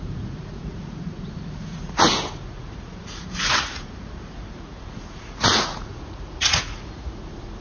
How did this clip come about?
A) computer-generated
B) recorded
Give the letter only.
A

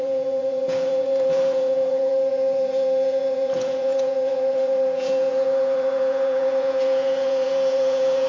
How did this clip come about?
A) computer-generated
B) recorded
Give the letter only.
A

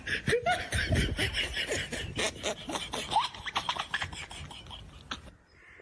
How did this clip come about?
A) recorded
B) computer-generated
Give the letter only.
A